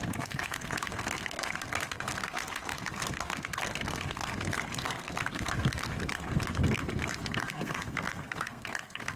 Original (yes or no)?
no